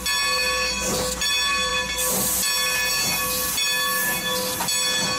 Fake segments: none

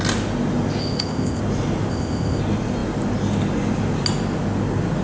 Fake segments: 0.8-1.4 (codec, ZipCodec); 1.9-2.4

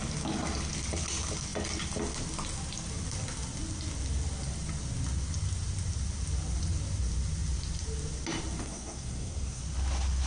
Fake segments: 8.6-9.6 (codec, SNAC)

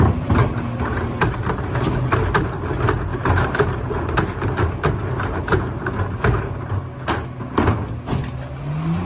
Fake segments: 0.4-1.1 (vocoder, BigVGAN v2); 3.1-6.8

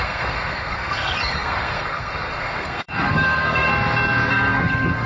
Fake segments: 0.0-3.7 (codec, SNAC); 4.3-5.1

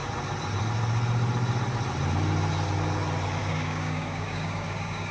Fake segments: 3.4-5.1 (codec, DAC)

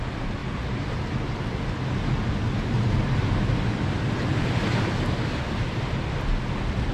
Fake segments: none